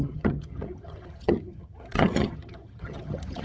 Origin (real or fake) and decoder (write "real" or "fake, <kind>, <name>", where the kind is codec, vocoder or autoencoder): fake, vocoder, HiFi-GAN